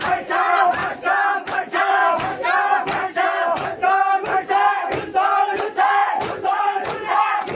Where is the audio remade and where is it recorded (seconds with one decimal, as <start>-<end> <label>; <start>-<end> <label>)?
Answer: 0.0-0.8 remade; 0.8-1.6 recorded; 1.6-2.0 remade; 2.0-5.6 recorded; 5.6-7.6 remade